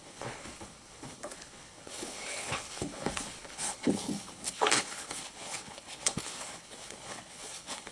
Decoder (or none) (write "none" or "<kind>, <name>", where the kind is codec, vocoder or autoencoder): codec, HILCodec